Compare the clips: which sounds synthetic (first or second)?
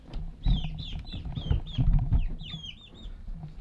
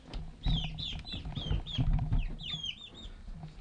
first